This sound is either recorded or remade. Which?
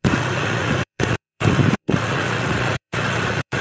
remade